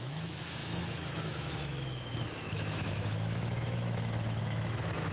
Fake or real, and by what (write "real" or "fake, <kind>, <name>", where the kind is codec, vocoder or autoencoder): fake, autoencoder, DAC-VAE